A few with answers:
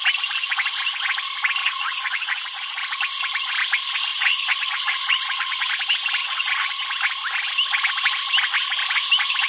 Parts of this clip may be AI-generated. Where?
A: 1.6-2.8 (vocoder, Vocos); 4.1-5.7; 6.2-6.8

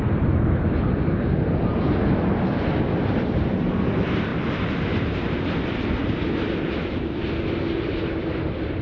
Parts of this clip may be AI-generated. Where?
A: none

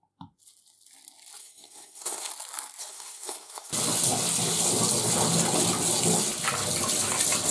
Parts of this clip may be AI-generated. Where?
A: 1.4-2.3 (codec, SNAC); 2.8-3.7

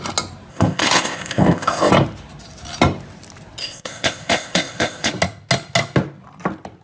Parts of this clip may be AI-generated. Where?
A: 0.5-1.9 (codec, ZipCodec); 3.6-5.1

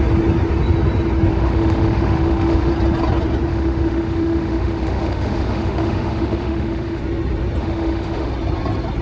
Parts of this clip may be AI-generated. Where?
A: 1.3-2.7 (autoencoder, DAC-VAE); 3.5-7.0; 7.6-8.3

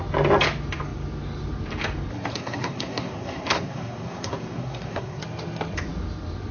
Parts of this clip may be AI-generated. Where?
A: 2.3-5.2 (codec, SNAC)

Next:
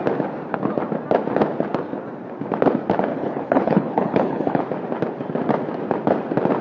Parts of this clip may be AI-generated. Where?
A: 3.1-4.6 (codec, HILCodec)

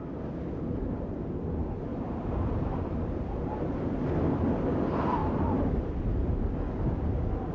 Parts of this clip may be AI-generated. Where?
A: 1.9-3.8 (vocoder, BigVGAN v2)